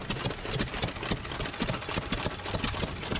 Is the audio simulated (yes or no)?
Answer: no